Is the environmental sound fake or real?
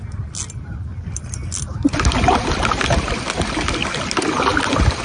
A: real